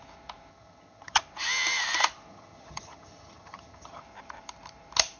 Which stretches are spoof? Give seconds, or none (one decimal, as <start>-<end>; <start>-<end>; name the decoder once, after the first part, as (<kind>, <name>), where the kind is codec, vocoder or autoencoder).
0.5-1.2 (vocoder, HiFi-GAN); 2.3-4.0